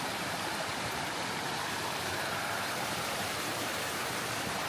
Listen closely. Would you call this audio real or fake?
fake